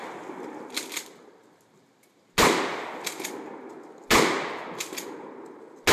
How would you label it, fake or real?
real